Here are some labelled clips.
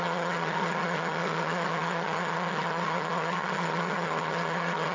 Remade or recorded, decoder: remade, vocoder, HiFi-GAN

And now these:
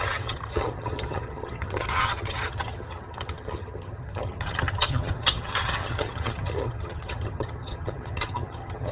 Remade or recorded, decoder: remade, vocoder, HiFi-GAN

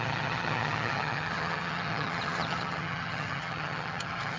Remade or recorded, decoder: remade, vocoder, HiFi-GAN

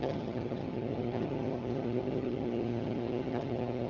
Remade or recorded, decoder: remade, vocoder, HiFi-GAN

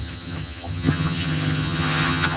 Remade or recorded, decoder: remade, vocoder, HiFi-GAN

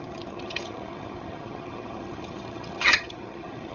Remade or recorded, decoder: remade, vocoder, HiFi-GAN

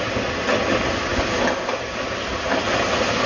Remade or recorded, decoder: recorded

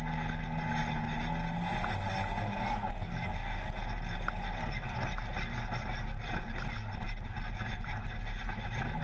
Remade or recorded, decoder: recorded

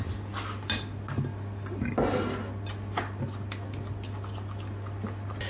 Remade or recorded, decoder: recorded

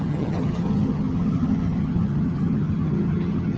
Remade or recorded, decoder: remade, vocoder, HiFi-GAN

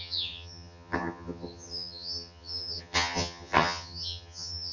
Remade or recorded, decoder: remade, vocoder, HiFi-GAN